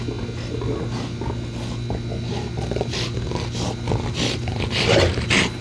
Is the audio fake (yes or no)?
no